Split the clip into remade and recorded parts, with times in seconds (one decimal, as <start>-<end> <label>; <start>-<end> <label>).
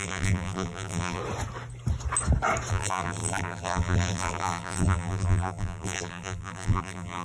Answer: 0.0-1.2 remade; 1.2-2.7 recorded; 2.7-7.2 remade